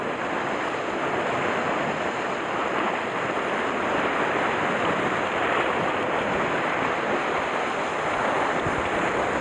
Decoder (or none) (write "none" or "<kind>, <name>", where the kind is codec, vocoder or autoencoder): none